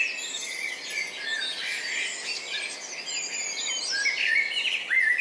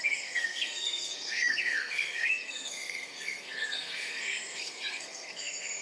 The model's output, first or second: second